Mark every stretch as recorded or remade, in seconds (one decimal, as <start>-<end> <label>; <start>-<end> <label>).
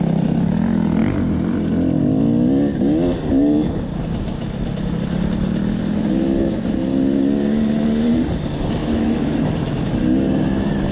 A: 0.0-8.8 recorded; 8.8-9.5 remade; 9.5-10.9 recorded